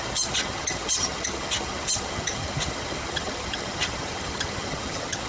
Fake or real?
fake